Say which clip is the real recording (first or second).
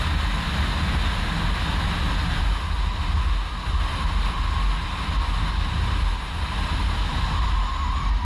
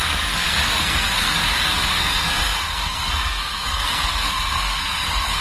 first